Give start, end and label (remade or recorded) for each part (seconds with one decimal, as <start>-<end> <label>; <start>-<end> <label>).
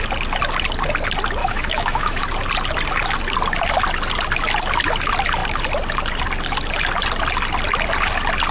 0.0-1.4 recorded; 1.4-2.2 remade; 2.2-8.5 recorded